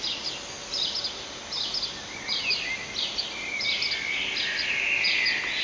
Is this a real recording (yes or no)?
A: yes